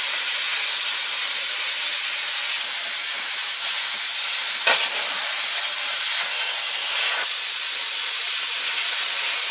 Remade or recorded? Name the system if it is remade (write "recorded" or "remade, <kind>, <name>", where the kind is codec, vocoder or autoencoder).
recorded